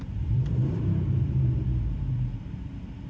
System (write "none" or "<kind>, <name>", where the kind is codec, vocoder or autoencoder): vocoder, BigVGAN v2